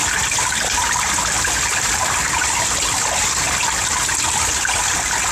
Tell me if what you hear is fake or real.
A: real